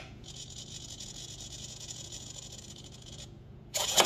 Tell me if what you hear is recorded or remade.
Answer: remade